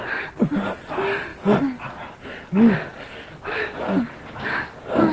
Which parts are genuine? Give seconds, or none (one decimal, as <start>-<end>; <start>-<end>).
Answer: 0.0-2.9; 4.1-5.1